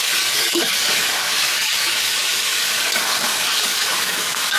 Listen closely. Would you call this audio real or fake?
fake